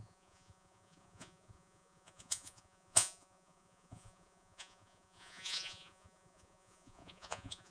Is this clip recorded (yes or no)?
no